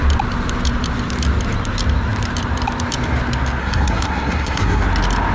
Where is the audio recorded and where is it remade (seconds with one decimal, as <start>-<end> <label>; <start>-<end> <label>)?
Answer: 0.0-3.6 recorded; 3.6-4.8 remade; 4.8-5.3 recorded